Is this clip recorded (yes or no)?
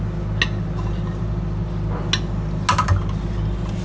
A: yes